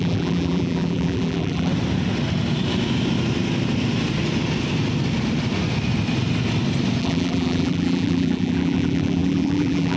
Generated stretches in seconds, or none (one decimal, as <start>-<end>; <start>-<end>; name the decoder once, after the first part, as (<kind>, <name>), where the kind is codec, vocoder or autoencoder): 0.0-1.7 (vocoder, BigVGAN v2); 7.0-10.0